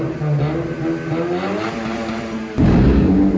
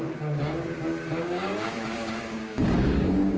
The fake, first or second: second